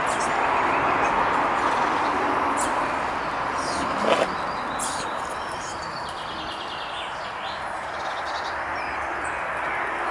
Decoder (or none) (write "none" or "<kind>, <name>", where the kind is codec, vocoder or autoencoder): none